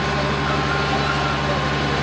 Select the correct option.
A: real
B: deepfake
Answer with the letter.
A